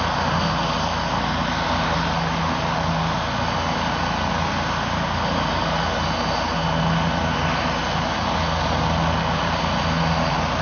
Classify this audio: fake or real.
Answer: real